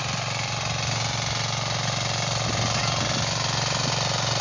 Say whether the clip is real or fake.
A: real